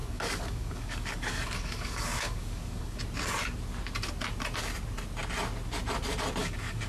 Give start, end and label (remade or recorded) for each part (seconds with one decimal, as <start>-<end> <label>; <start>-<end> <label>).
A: 0.0-3.0 remade; 3.0-6.4 recorded; 6.4-6.9 remade